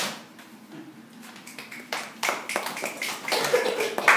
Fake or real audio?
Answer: real